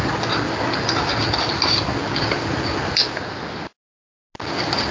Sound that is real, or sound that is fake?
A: real